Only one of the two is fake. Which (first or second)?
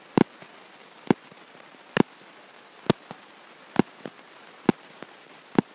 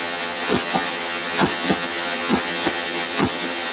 second